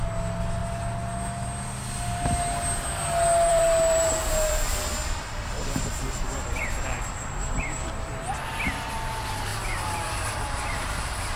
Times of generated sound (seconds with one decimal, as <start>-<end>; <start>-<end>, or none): 3.5-8.3; 9.5-11.4